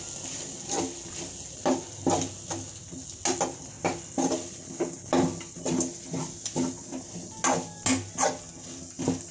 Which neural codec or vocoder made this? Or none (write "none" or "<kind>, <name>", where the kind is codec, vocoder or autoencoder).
none